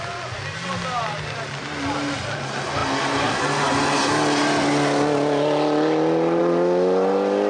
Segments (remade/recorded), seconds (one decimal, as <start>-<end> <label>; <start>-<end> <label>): 0.0-7.5 recorded